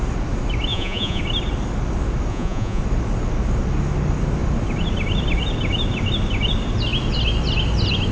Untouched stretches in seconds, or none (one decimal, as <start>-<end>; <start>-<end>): 0.0-0.7; 1.2-2.3; 2.8-8.1